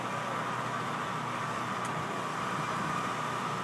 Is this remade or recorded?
recorded